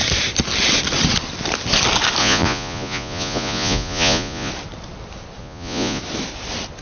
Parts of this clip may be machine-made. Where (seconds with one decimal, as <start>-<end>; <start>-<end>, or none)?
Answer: 2.2-4.5; 5.4-6.0